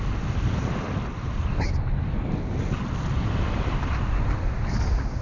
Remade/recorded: recorded